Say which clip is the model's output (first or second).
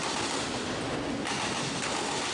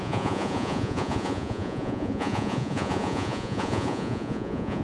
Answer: second